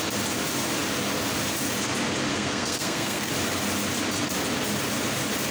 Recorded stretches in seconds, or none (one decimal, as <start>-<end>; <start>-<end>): 0.0-2.3; 3.3-5.5